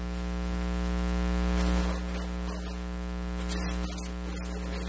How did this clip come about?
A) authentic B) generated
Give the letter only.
A